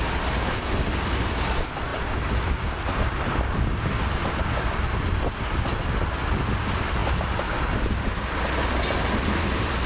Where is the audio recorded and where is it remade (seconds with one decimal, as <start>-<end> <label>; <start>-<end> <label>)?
0.0-9.9 recorded